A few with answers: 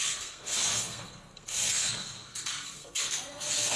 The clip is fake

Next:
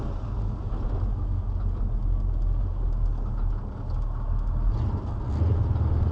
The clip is real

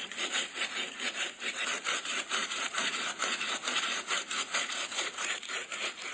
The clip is fake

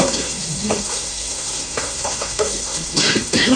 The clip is fake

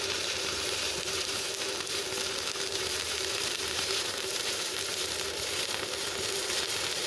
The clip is fake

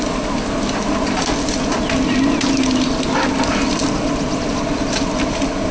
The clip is real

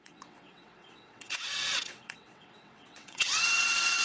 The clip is fake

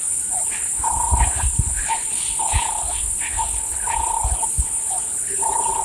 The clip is fake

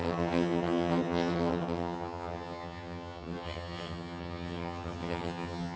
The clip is fake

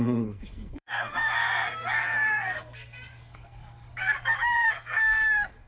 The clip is fake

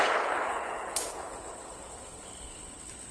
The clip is fake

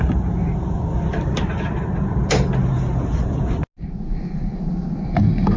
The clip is real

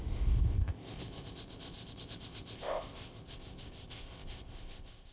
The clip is fake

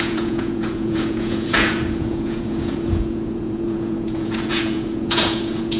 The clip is fake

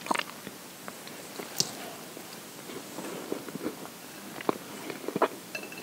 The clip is real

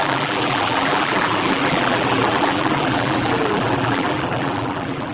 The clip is fake